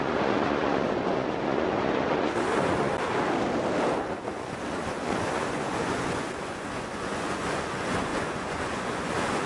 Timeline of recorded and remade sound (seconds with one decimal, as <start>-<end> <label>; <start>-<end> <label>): 0.0-2.9 remade; 2.9-4.1 recorded; 4.1-9.5 remade

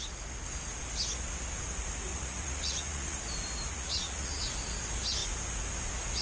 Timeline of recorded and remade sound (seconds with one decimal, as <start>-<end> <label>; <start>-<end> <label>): 0.0-2.1 recorded; 2.1-3.2 remade; 3.2-3.7 recorded; 3.7-4.4 remade; 4.4-6.2 recorded